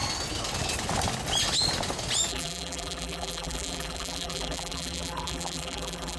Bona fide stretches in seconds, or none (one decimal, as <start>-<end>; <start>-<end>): 0.0-2.3